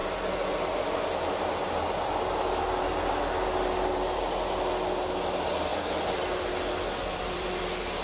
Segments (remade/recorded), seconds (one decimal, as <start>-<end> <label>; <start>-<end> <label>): 0.0-5.7 recorded; 5.7-6.5 remade; 6.5-7.0 recorded; 7.0-7.6 remade; 7.6-8.0 recorded